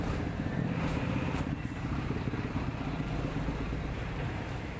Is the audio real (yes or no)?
no